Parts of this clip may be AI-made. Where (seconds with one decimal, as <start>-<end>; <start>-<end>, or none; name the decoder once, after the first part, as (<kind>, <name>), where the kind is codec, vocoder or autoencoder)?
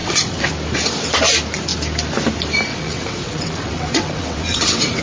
0.0-0.5 (vocoder, WaveNeXt); 2.7-5.0